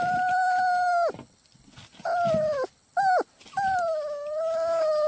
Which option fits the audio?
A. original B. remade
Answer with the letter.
A